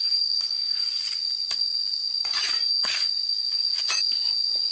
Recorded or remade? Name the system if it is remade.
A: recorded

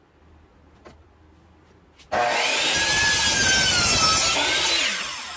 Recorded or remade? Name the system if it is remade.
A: recorded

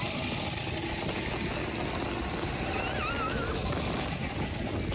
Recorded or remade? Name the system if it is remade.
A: recorded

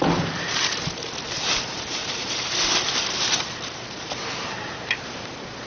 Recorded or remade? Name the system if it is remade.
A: remade, vocoder, BigVGAN v2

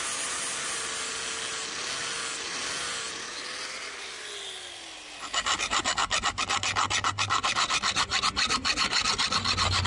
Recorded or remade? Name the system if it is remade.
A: recorded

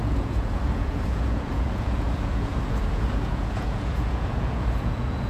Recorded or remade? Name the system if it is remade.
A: remade, vocoder, Vocos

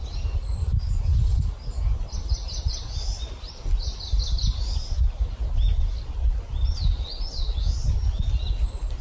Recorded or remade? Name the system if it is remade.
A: recorded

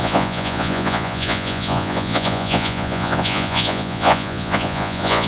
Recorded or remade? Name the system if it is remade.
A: remade, vocoder, Vocos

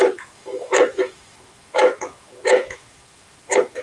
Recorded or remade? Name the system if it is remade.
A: remade, autoencoder, DAC-VAE